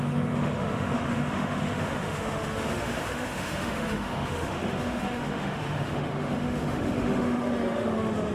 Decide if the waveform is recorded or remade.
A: remade